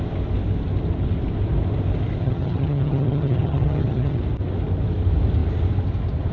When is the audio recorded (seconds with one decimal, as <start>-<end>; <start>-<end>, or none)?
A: 0.0-2.2; 4.2-6.3